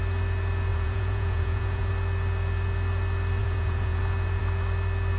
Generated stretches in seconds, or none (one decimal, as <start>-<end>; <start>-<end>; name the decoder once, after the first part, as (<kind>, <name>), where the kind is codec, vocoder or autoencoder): 0.7-1.9 (vocoder, Vocos); 3.4-4.0